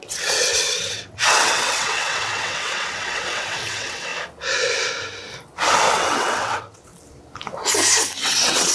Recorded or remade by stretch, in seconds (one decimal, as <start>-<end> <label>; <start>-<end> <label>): 0.0-4.1 remade; 4.1-5.9 recorded; 5.9-6.9 remade; 6.9-8.2 recorded; 8.2-8.7 remade